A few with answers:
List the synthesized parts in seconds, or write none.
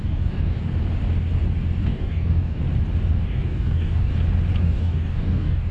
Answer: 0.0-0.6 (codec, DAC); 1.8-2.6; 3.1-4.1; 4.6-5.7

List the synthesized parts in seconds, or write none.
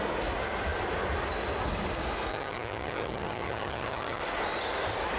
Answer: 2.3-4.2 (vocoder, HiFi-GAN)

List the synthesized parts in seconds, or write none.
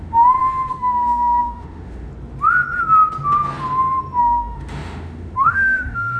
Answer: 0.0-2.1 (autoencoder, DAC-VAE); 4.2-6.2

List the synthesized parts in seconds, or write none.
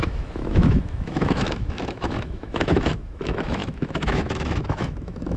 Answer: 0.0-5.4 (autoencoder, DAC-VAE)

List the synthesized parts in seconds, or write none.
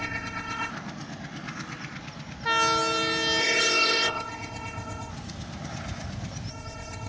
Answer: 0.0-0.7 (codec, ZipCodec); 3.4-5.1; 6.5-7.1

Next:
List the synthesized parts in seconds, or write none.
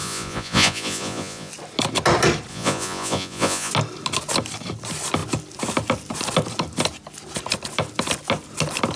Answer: 0.0-1.5 (vocoder, Vocos); 2.5-3.7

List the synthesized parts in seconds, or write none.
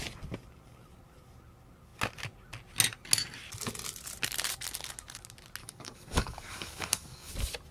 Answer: 5.6-7.3 (codec, DAC)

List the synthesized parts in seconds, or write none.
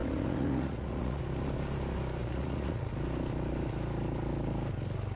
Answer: 0.0-1.2 (vocoder, Vocos); 2.2-2.9